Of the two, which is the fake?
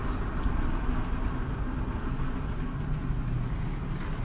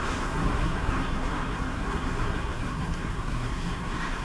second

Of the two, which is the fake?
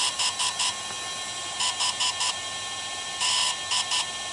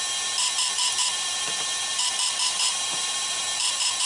second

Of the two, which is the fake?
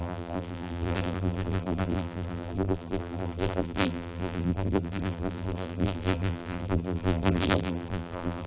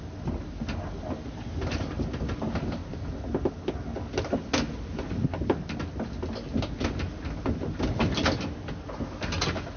first